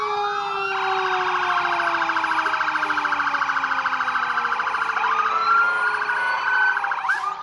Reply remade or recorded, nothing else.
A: recorded